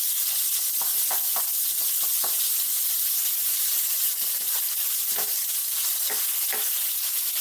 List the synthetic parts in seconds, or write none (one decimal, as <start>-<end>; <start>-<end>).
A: 2.7-4.1

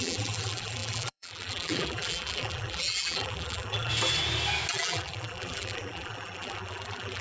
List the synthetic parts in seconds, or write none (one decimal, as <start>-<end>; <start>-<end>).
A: 0.0-3.9; 4.7-7.2

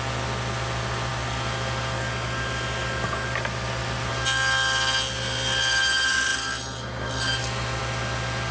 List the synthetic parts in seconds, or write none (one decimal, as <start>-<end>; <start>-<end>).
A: none

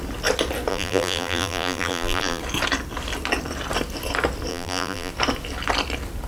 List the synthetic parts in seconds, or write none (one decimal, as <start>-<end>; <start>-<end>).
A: 0.7-2.4; 4.5-5.1